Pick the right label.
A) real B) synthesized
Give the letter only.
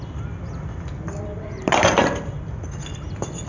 A